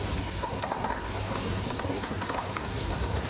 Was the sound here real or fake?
fake